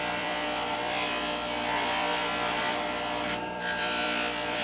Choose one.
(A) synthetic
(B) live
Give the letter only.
A